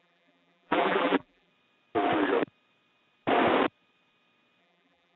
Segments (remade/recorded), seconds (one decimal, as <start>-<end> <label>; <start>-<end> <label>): 0.0-1.5 remade; 1.5-4.6 recorded; 4.6-5.2 remade

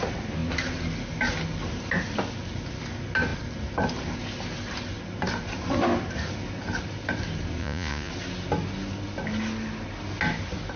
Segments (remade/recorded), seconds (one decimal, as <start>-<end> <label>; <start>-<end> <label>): 0.0-7.6 recorded; 7.6-8.1 remade; 8.1-10.8 recorded

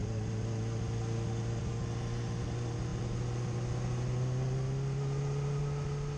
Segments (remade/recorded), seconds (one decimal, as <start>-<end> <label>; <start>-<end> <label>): 0.0-6.2 recorded

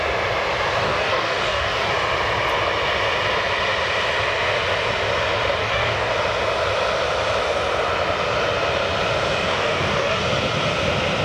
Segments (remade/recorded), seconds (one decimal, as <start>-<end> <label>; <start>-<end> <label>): 0.0-0.8 recorded; 0.8-1.9 remade; 1.9-5.6 recorded; 5.6-6.1 remade; 6.1-9.5 recorded; 9.5-10.2 remade; 10.2-11.2 recorded

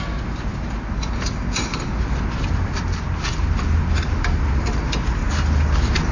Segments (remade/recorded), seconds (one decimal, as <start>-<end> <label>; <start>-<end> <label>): 0.0-6.1 recorded

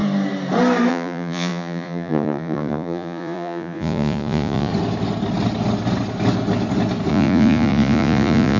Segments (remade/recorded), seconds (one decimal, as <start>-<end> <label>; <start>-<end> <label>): 0.0-0.9 recorded; 0.9-4.7 remade; 4.7-7.1 recorded; 7.1-8.6 remade